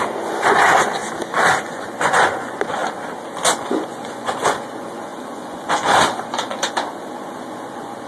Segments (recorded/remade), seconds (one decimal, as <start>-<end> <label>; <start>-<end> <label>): 0.0-1.0 remade; 1.0-1.6 recorded; 1.6-2.8 remade; 2.8-3.5 recorded; 3.5-8.1 remade